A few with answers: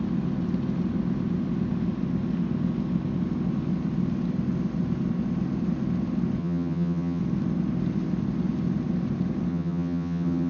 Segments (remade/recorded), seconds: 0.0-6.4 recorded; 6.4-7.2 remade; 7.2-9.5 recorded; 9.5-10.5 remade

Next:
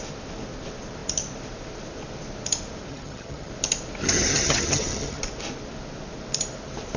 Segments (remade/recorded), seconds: 0.0-2.9 recorded; 2.9-3.5 remade; 3.5-4.0 recorded; 4.0-5.2 remade; 5.2-7.0 recorded

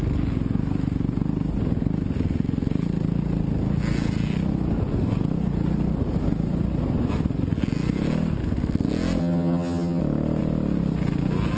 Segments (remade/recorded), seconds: 0.0-9.2 recorded; 9.2-10.0 remade; 10.0-11.6 recorded

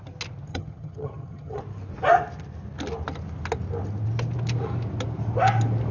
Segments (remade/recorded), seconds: 0.0-0.5 recorded; 0.5-1.6 remade; 1.6-5.9 recorded

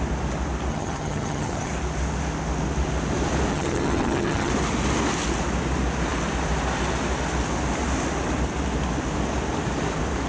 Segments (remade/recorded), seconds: 0.0-0.7 recorded; 0.7-1.7 remade; 1.7-3.5 recorded; 3.5-4.5 remade; 4.5-10.3 recorded

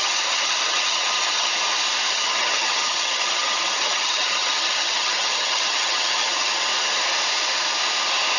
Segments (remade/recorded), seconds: 0.0-1.5 remade; 1.5-2.1 recorded; 2.1-6.7 remade; 6.7-8.4 recorded

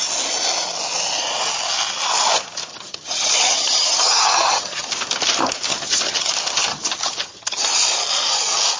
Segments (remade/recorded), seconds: 0.0-2.7 recorded; 2.7-4.9 remade; 4.9-5.7 recorded; 5.7-6.3 remade; 6.3-6.7 recorded; 6.7-7.6 remade; 7.6-8.8 recorded